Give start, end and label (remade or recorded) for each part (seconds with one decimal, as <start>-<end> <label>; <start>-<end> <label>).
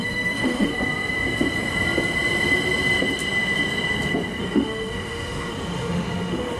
0.0-0.7 remade; 0.7-4.4 recorded; 4.4-6.6 remade